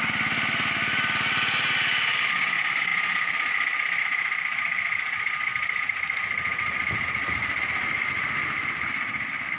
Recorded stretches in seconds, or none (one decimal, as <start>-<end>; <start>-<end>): 0.0-9.6